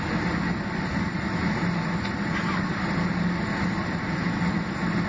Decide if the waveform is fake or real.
real